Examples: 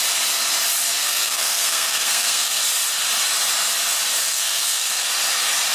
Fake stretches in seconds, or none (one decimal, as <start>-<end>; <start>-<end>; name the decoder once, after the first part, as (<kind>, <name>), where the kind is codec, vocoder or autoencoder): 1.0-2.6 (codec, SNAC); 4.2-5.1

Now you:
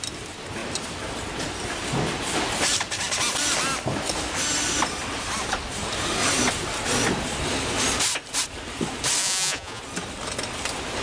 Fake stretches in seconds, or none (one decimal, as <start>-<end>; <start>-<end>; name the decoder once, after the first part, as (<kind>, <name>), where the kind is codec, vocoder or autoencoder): 9.2-9.8 (vocoder, Vocos)

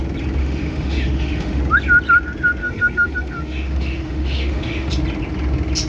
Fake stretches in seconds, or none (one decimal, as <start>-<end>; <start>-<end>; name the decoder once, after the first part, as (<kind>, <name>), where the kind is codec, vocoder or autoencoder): 0.4-1.6 (autoencoder, DAC-VAE); 2.6-4.9

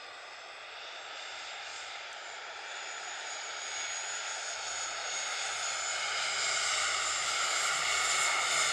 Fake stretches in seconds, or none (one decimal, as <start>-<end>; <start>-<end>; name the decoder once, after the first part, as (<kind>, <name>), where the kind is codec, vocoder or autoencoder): 1.7-3.5 (vocoder, BigVGAN v2)